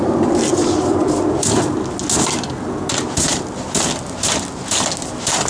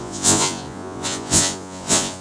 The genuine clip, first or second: first